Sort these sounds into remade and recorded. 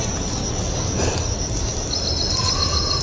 recorded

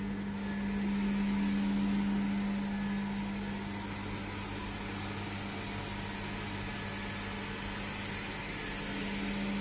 recorded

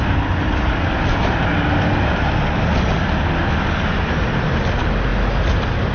recorded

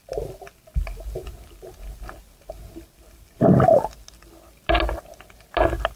recorded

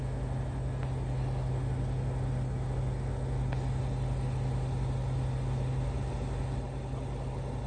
recorded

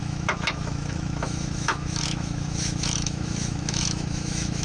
remade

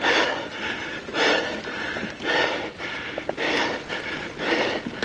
recorded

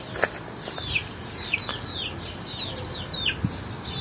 recorded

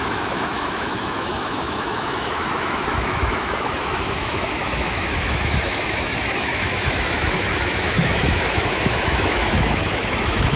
remade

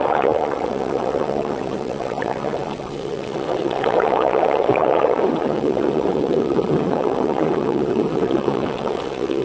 remade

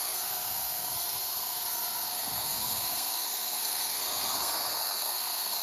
remade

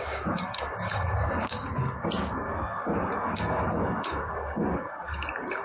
remade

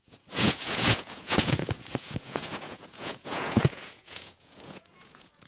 remade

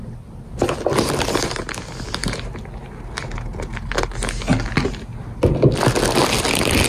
recorded